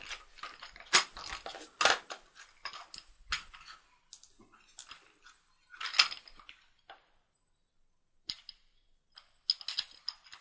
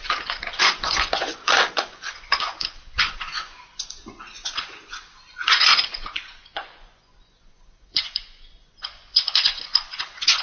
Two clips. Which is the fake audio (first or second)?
second